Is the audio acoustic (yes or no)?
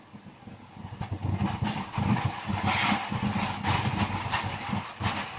yes